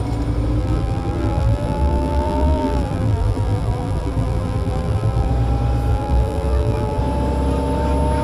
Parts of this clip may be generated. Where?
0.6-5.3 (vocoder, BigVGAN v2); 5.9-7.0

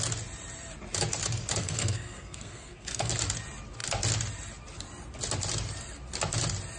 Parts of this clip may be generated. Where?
1.6-3.1 (codec, SNAC)

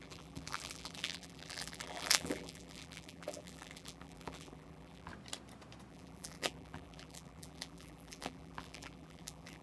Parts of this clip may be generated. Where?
0.0-5.1 (vocoder, BigVGAN v2); 5.9-9.6

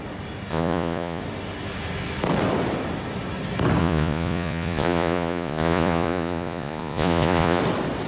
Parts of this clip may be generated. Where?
0.5-1.2 (vocoder, Vocos); 3.8-7.6

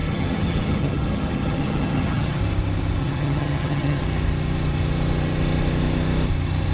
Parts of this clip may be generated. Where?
0.0-2.4 (vocoder, HiFi-GAN); 3.0-4.0